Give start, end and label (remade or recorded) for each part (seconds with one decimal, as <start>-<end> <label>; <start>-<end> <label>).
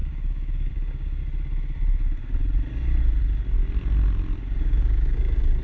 0.0-1.2 remade; 1.2-4.6 recorded; 4.6-5.6 remade